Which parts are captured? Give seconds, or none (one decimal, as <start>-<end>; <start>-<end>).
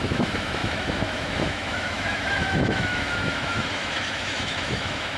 none